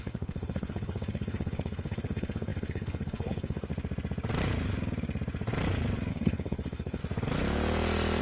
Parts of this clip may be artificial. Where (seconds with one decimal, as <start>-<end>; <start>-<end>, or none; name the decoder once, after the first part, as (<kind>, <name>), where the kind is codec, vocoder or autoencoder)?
0.0-3.7 (codec, HILCodec); 6.1-7.0